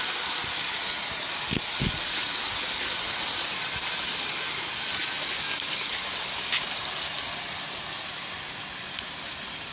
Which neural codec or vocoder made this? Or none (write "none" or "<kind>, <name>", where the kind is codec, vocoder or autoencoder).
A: none